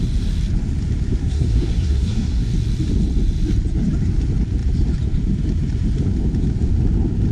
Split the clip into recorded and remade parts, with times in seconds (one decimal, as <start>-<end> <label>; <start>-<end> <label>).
0.0-1.2 recorded; 1.2-2.5 remade; 2.5-7.3 recorded